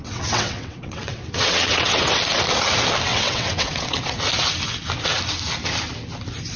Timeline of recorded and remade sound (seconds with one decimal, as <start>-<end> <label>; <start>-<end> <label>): 0.0-2.1 remade; 2.1-3.1 recorded; 3.1-4.2 remade; 4.2-6.6 recorded